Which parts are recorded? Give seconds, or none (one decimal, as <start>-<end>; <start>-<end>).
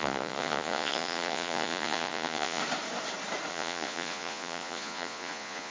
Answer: 2.6-3.5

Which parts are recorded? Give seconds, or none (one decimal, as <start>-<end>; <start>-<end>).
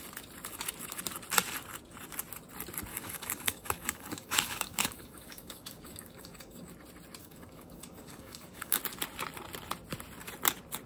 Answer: 0.0-2.9; 6.7-7.2; 8.8-10.9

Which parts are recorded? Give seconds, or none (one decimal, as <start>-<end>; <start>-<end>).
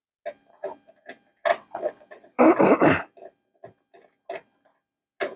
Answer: 0.0-1.5; 2.4-5.4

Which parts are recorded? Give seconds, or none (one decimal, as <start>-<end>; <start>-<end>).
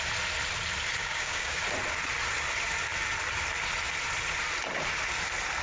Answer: 0.0-1.0; 1.6-5.6